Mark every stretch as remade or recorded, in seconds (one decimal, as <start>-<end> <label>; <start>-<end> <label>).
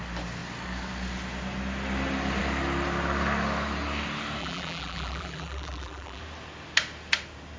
0.0-4.4 recorded; 4.4-6.2 remade; 6.2-7.6 recorded